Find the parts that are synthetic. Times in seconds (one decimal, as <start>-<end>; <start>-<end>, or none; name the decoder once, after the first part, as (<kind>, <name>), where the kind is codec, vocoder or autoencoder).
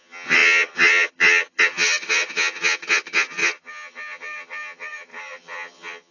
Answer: 0.0-6.1 (vocoder, HiFi-GAN)